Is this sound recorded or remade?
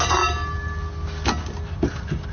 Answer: recorded